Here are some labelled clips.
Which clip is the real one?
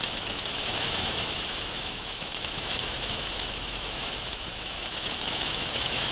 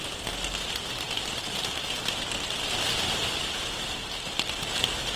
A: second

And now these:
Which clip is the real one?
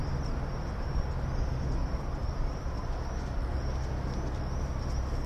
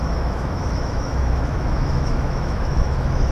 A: first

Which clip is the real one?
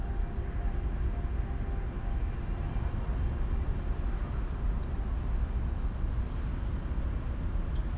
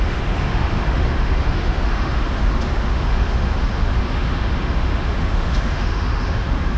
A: first